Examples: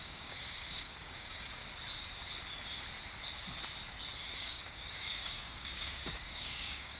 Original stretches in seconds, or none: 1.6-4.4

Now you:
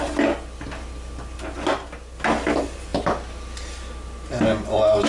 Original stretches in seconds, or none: 0.0-5.1

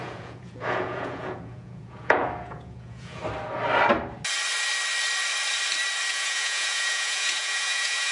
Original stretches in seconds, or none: 3.2-6.1

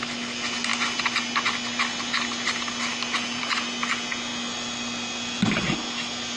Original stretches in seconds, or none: 0.0-6.4

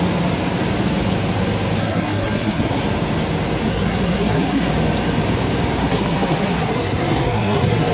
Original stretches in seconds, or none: 0.0-1.8; 2.8-3.7; 4.7-5.8

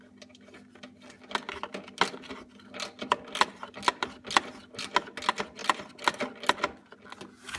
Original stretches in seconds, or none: 0.0-7.6

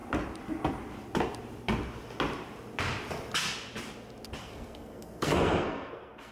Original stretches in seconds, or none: 0.0-4.4

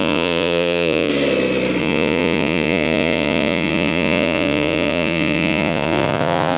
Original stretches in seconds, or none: 1.1-1.8